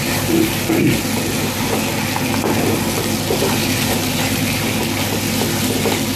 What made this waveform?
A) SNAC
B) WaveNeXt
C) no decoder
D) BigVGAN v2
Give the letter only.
C